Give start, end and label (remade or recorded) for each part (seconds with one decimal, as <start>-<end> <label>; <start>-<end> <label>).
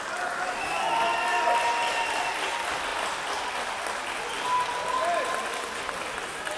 0.0-6.6 recorded